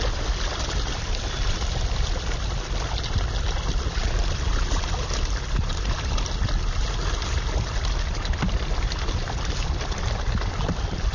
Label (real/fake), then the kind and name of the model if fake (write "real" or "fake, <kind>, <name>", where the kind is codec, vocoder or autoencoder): real